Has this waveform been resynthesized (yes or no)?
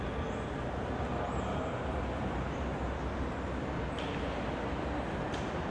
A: no